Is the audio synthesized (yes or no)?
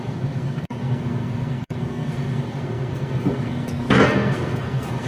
yes